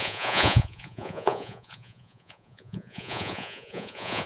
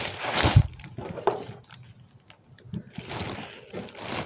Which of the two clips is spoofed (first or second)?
first